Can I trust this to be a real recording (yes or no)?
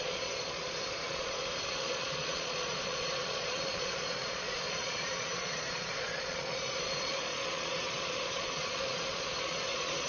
no